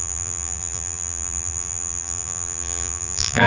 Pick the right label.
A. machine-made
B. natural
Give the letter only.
A